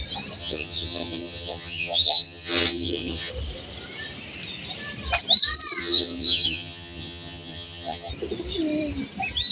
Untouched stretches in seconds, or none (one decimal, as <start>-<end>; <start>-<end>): 0.0-0.4; 3.3-5.8; 8.1-9.5